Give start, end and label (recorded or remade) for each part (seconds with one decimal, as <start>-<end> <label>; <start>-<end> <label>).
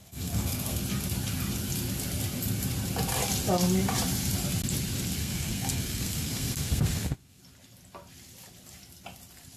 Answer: 0.0-0.8 remade; 0.8-5.2 recorded; 5.2-7.4 remade; 7.4-9.6 recorded